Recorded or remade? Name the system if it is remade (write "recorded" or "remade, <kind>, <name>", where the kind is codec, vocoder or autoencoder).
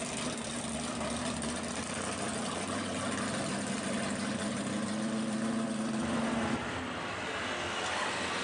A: recorded